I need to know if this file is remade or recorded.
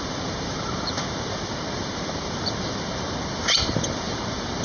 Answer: remade